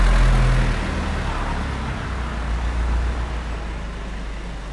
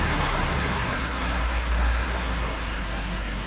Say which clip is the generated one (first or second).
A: second